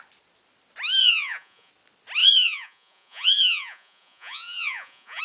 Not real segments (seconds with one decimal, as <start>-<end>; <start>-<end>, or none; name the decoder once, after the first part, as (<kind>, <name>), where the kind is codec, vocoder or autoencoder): 1.0-1.7 (vocoder, Vocos); 2.2-5.2